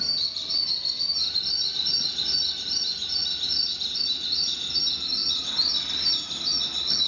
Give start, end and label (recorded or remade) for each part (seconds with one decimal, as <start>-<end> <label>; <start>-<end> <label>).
0.0-7.1 recorded